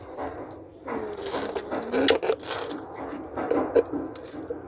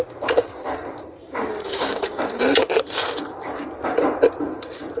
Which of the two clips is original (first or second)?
first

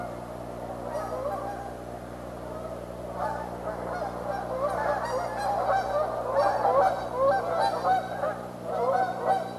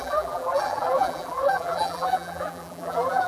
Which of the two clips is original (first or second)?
first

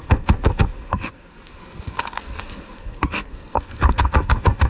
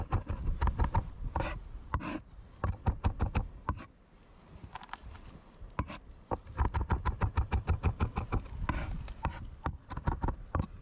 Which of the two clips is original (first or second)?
second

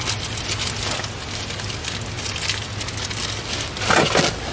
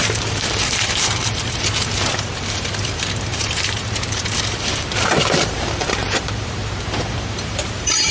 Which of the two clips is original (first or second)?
first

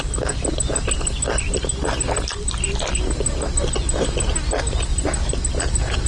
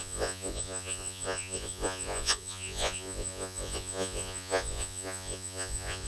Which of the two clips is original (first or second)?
first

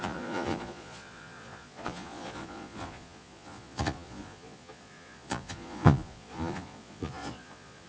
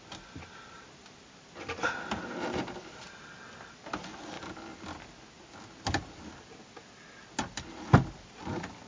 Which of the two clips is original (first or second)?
second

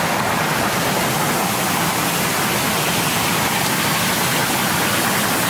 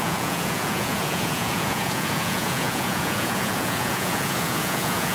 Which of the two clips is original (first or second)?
first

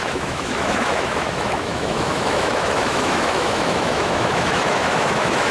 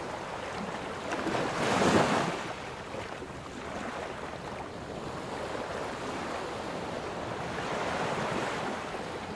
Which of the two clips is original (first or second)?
second